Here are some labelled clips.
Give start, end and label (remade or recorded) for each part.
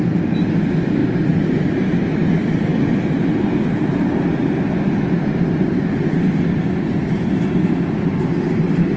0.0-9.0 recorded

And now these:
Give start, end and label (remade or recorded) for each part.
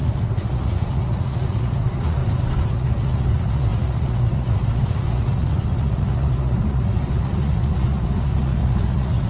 0.0-2.2 remade; 2.2-2.7 recorded; 2.7-9.3 remade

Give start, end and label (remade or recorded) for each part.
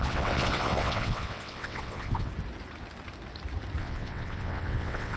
0.0-2.3 remade; 2.3-3.8 recorded; 3.8-5.2 remade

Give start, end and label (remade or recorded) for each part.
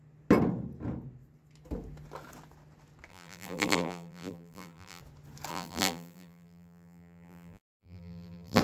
0.0-3.1 recorded; 3.1-5.0 remade; 5.0-5.5 recorded; 5.5-8.6 remade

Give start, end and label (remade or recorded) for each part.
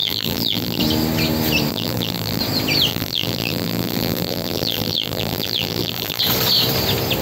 0.0-0.8 remade; 0.8-1.7 recorded; 1.7-2.4 remade; 2.4-2.9 recorded; 2.9-6.2 remade; 6.2-7.2 recorded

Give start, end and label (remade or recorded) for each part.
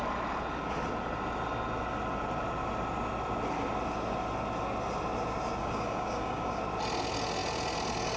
0.0-5.6 recorded; 5.6-6.6 remade; 6.6-8.2 recorded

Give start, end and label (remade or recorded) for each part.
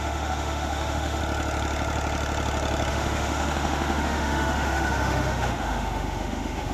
0.0-1.2 remade; 1.2-2.9 recorded; 2.9-6.7 remade